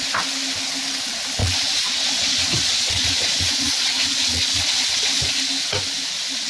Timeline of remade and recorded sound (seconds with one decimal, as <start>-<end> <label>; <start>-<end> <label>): 0.0-1.4 recorded; 1.4-5.3 remade; 5.3-6.5 recorded